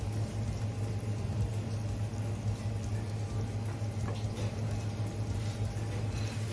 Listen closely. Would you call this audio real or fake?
real